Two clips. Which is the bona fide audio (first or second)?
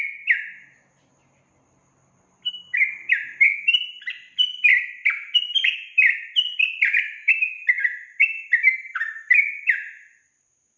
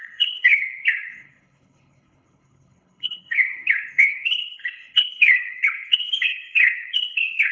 first